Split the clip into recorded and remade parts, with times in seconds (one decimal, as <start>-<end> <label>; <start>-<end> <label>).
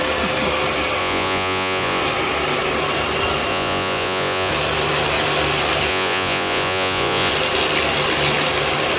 0.0-1.0 recorded; 1.0-2.0 remade; 2.0-3.5 recorded; 3.5-4.5 remade; 4.5-5.9 recorded; 5.9-7.3 remade; 7.3-9.0 recorded